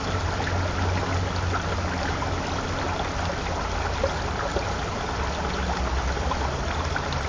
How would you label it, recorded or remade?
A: recorded